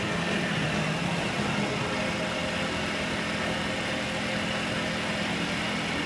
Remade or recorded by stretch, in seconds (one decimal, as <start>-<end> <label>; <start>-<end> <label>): 0.0-6.1 recorded